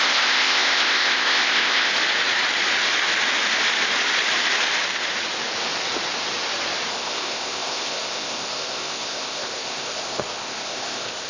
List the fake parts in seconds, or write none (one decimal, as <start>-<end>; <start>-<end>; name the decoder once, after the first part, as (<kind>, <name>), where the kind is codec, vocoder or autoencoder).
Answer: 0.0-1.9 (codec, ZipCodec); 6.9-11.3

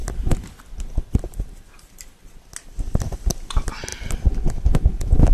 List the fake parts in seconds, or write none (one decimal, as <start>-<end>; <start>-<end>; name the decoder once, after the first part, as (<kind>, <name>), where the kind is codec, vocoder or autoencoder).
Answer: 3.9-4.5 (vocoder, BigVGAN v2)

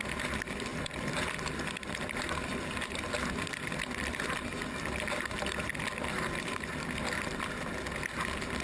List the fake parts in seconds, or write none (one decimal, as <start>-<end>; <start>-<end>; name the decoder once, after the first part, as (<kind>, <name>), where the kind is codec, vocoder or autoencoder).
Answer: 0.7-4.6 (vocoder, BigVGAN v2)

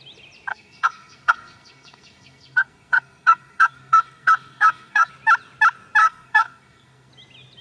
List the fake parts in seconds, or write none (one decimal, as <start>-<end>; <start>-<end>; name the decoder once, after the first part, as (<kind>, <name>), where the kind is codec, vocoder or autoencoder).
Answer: 0.5-5.1 (codec, SNAC); 6.0-7.1

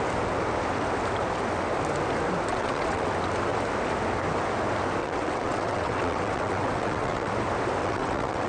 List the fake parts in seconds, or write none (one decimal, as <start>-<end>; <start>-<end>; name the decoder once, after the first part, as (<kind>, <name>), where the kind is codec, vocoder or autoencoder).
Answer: 2.5-3.1 (vocoder, WaveNeXt); 5.0-7.3; 7.8-8.5